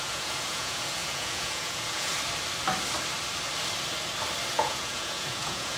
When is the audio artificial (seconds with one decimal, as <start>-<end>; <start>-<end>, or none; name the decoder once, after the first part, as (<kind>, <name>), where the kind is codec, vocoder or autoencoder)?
0.0-2.1 (vocoder, Vocos); 4.5-5.8